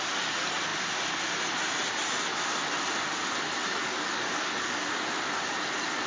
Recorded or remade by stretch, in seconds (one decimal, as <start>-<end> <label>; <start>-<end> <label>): 0.0-3.8 recorded; 3.8-4.8 remade; 4.8-6.1 recorded